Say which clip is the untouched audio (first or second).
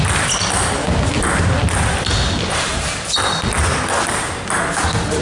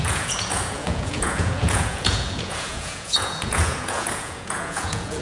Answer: first